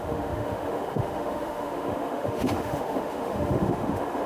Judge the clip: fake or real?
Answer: fake